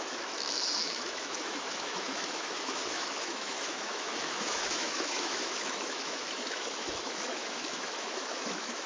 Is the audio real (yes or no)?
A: no